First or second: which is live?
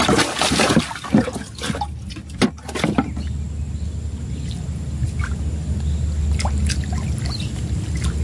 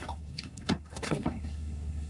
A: first